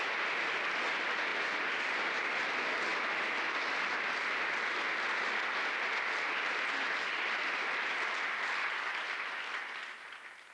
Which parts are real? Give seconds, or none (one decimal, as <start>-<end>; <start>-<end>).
0.0-10.5